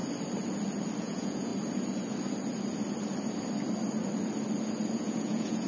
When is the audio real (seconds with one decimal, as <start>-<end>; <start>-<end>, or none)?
0.0-1.0; 1.5-4.9